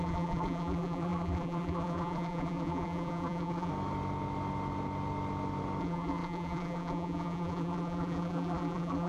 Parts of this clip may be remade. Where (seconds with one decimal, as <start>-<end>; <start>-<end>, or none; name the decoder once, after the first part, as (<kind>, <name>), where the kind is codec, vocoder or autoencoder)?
0.0-3.7 (vocoder, BigVGAN v2); 5.8-9.1